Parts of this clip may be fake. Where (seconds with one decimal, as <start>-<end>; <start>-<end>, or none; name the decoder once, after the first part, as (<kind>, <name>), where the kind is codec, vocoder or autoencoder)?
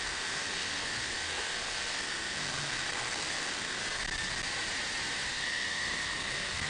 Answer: 0.0-3.8 (codec, SNAC); 5.3-6.7